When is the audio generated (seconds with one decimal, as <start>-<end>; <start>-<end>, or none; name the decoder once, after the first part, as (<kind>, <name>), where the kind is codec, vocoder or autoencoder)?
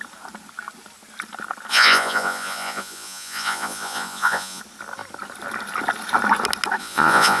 1.7-4.6 (vocoder, Vocos); 6.8-7.4